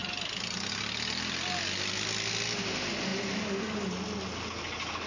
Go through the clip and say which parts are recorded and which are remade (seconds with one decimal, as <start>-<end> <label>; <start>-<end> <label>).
0.0-5.1 recorded